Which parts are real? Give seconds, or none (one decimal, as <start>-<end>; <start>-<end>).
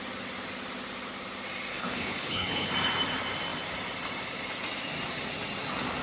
0.0-1.7; 2.7-6.0